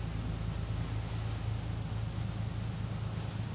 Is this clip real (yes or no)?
yes